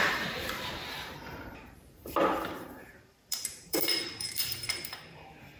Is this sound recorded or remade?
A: remade